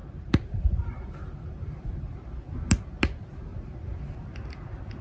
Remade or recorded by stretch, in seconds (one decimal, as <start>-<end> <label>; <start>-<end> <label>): 0.0-5.0 recorded